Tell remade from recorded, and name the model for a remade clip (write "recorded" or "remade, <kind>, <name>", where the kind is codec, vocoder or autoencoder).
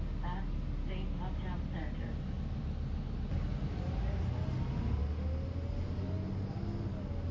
recorded